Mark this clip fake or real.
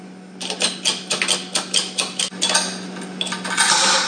real